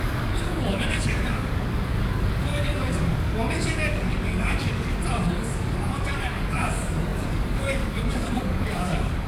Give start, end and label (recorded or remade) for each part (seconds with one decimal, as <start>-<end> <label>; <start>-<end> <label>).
0.0-9.3 remade